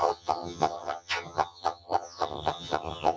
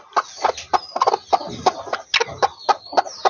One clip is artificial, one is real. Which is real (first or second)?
second